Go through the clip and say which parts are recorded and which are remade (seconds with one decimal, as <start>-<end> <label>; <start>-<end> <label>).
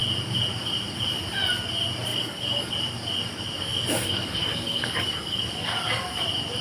0.0-2.1 recorded; 2.1-2.7 remade; 2.7-3.7 recorded; 3.7-6.1 remade; 6.1-6.6 recorded